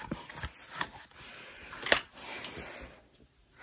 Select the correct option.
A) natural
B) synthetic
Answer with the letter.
A